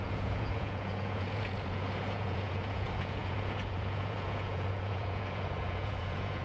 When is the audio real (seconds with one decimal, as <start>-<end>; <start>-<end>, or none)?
none